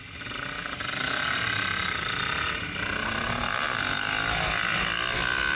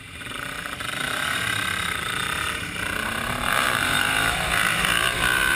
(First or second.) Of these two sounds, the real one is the first